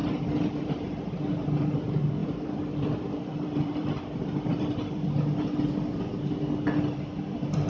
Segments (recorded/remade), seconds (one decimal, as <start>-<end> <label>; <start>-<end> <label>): 0.0-1.0 remade; 1.0-2.2 recorded; 2.2-6.1 remade; 6.1-7.7 recorded